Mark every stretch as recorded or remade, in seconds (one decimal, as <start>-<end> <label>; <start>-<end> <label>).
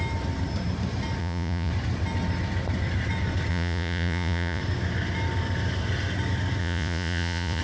0.0-1.2 recorded; 1.2-1.7 remade; 1.7-3.5 recorded; 3.5-4.6 remade; 4.6-6.6 recorded; 6.6-7.6 remade